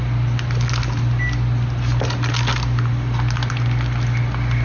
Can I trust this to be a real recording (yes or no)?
yes